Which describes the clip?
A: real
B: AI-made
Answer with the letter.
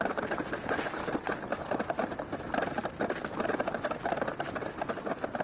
A